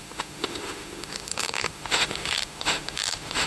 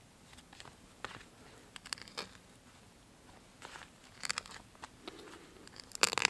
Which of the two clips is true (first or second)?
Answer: second